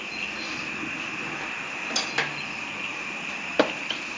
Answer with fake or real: fake